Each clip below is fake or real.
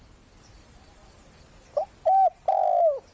real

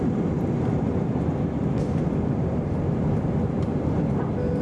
real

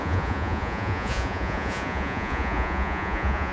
fake